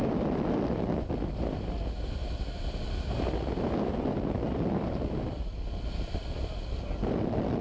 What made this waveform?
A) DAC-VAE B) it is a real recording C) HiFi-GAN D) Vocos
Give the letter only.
B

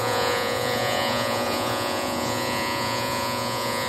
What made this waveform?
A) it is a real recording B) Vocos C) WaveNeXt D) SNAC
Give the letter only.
B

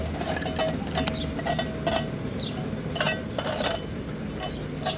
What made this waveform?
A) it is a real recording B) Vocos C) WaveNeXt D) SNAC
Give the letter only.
A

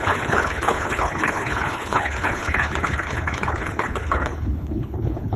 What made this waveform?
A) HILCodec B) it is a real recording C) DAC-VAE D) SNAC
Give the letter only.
A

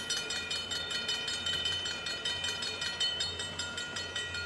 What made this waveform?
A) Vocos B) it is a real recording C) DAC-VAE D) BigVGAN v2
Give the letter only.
D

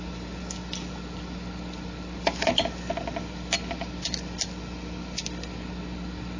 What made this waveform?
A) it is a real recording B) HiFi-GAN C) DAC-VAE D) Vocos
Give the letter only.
A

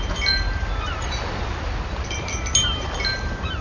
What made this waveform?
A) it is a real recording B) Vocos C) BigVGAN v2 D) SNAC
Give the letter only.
C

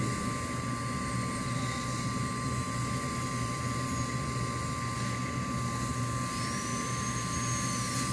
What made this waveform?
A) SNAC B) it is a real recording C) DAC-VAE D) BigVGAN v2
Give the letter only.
B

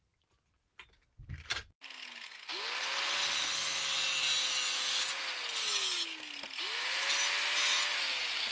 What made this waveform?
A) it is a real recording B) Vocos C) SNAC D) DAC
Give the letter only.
A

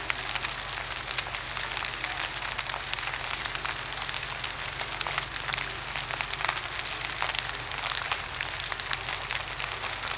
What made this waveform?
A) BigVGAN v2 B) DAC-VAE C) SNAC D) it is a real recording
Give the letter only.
D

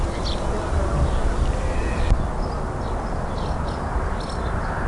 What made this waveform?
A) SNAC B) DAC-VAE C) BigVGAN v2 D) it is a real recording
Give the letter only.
D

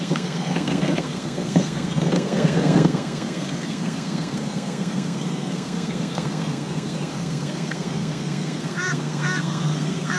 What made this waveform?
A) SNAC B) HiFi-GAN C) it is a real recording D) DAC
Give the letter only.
A